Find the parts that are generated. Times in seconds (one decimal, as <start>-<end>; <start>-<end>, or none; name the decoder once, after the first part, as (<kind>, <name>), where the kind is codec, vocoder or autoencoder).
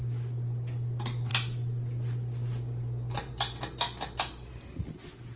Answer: none